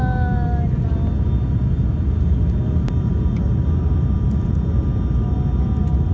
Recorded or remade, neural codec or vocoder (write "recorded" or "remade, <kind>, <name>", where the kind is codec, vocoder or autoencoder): recorded